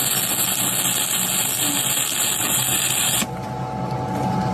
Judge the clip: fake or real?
real